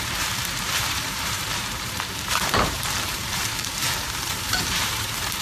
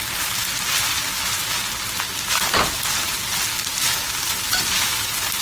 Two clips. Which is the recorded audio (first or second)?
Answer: second